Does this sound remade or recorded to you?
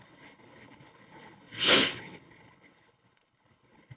remade